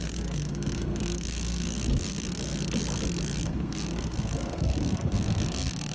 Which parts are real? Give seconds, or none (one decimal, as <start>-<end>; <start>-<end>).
2.4-3.4